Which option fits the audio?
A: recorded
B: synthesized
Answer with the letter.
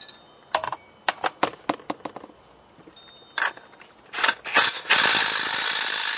A